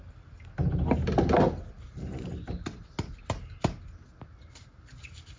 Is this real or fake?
real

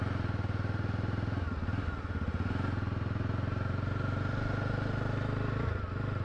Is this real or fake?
real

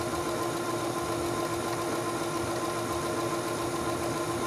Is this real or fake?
real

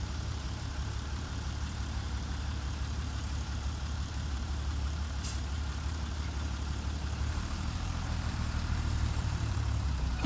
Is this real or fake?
fake